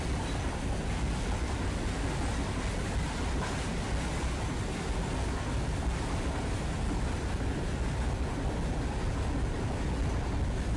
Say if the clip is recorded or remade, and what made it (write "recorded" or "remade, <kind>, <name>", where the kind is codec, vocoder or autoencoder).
recorded